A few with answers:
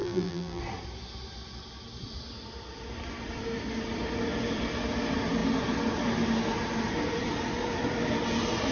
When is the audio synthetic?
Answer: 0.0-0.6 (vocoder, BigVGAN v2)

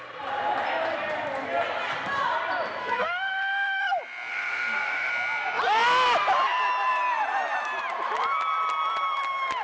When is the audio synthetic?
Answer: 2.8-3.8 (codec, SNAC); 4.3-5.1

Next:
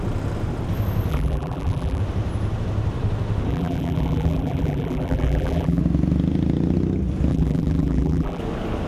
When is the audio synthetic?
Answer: 1.1-2.0 (vocoder, BigVGAN v2); 3.5-5.8; 7.3-8.4

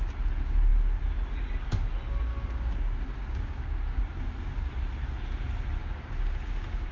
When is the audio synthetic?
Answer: 2.3-4.0 (codec, DAC); 5.8-6.9